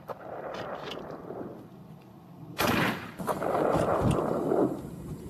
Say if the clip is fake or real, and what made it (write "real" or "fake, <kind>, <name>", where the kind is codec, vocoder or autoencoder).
fake, vocoder, BigVGAN v2